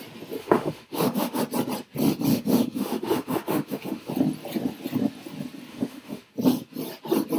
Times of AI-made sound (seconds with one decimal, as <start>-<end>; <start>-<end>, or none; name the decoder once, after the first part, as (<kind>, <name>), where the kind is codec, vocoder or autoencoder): 0.4-1.4 (autoencoder, DAC-VAE); 2.3-4.1; 5.7-6.3